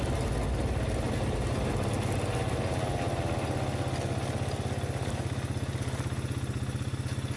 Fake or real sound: real